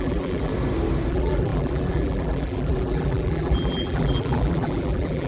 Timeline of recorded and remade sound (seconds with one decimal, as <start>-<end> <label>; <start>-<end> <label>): 0.0-0.5 remade; 0.5-1.1 recorded; 1.1-5.3 remade